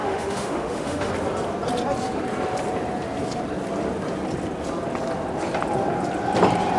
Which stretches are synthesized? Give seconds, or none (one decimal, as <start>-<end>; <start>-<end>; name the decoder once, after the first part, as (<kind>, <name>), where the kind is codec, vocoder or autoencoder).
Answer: 0.0-1.1 (autoencoder, DAC-VAE)